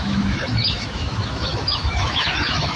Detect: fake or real fake